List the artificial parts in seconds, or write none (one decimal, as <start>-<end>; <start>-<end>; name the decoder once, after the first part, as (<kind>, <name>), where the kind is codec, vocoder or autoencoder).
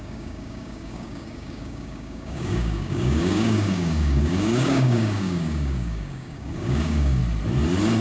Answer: 0.0-7.2 (codec, DAC)